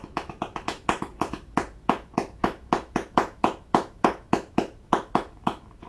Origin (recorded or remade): remade